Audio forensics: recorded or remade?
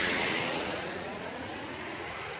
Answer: remade